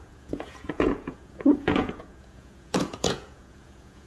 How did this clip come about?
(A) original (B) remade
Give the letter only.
B